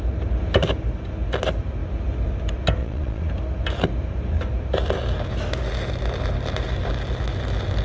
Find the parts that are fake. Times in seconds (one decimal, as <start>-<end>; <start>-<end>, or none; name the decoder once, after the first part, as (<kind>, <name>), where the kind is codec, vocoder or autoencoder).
2.8-3.3 (vocoder, Vocos)